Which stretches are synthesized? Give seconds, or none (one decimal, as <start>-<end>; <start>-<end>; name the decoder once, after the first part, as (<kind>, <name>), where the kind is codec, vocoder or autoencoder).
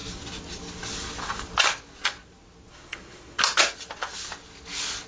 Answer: 2.7-3.4 (codec, SNAC)